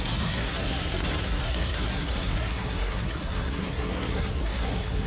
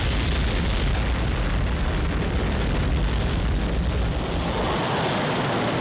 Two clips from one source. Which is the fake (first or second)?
first